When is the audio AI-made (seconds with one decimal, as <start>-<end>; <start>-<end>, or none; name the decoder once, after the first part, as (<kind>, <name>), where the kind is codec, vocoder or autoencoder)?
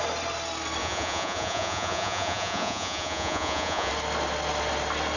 0.8-3.9 (vocoder, Vocos)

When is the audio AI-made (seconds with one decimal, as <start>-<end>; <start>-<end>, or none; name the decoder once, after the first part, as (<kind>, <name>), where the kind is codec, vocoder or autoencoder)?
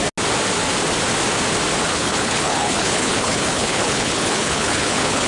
1.9-5.3 (codec, HILCodec)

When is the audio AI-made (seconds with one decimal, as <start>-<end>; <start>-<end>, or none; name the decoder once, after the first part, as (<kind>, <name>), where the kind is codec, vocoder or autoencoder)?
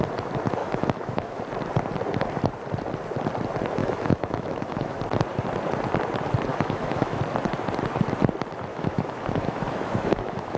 0.6-1.4 (autoencoder, DAC-VAE); 3.8-5.0; 6.5-7.2; 8.7-10.6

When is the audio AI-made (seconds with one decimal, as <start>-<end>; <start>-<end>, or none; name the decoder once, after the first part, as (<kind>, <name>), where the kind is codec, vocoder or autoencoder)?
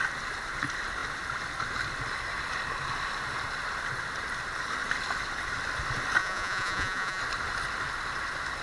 6.2-7.2 (vocoder, Vocos)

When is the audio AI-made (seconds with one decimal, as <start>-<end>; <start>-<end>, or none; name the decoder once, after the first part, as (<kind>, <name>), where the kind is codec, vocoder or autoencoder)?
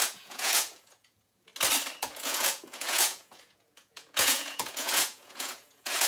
0.0-1.5 (vocoder, Vocos); 2.0-6.1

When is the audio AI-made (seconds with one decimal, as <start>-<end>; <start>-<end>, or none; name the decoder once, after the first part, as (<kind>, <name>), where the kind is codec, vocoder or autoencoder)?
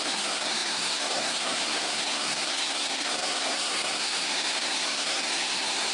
0.0-5.9 (codec, SNAC)